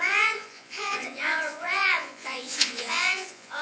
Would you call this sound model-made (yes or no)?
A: yes